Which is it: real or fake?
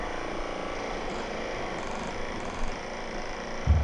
real